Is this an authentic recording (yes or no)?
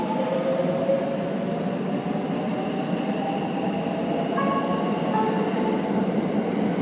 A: yes